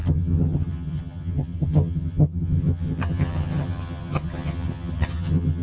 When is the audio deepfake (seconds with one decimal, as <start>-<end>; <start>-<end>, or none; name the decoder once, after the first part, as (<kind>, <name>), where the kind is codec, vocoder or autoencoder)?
0.0-5.6 (vocoder, HiFi-GAN)